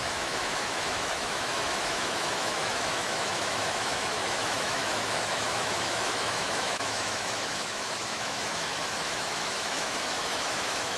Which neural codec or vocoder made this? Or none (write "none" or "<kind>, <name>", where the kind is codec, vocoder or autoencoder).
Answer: autoencoder, DAC-VAE